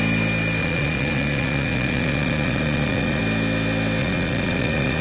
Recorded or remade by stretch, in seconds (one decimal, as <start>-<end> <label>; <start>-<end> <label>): 0.0-0.6 recorded; 0.6-3.2 remade; 3.2-4.0 recorded; 4.0-5.0 remade